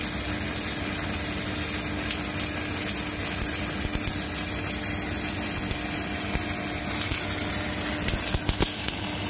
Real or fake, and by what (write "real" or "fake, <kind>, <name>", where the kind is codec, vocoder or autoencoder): real